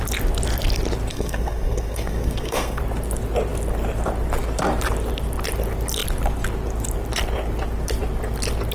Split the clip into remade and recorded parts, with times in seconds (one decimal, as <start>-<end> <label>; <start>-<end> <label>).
0.0-1.1 recorded; 1.1-2.8 remade; 2.8-8.7 recorded